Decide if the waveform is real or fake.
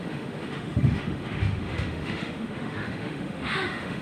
fake